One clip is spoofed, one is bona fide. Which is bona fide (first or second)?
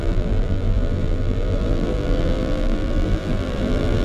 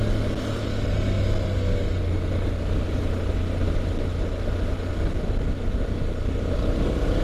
second